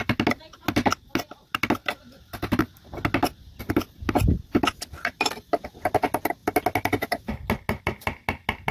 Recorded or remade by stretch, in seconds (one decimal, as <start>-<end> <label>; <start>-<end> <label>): 0.0-8.7 recorded